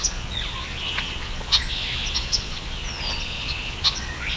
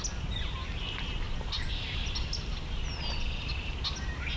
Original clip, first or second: second